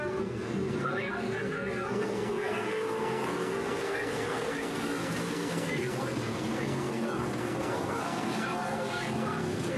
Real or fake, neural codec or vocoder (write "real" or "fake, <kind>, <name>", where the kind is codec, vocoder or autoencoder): fake, codec, SNAC